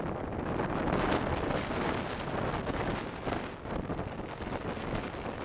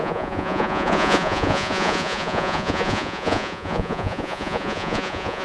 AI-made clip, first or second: second